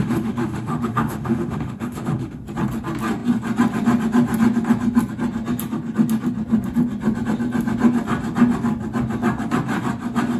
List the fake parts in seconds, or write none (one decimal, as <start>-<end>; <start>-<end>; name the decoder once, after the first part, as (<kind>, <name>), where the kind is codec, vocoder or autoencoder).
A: 0.0-2.4 (autoencoder, DAC-VAE)